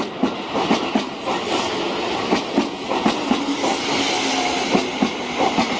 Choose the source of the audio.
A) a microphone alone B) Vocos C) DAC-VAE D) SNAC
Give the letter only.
A